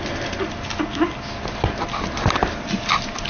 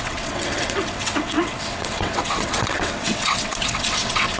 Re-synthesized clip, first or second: second